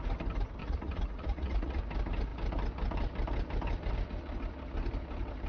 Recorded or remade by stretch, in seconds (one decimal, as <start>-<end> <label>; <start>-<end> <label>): 0.0-0.6 recorded; 0.6-1.8 remade; 1.8-5.5 recorded